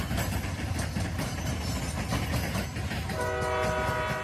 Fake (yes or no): no